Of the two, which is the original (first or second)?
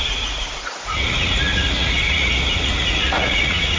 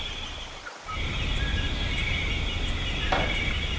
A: second